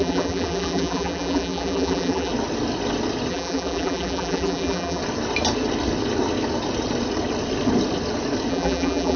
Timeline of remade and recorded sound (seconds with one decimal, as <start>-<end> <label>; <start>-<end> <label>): 0.0-2.3 remade; 2.3-3.3 recorded; 3.3-5.0 remade; 5.0-8.5 recorded; 8.5-9.2 remade